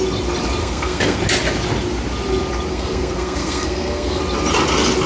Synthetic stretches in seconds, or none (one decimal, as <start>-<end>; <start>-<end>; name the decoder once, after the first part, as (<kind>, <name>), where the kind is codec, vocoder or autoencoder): 0.6-1.2 (codec, SNAC); 2.7-4.2